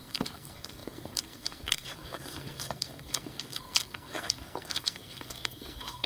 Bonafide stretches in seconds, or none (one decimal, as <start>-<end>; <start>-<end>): none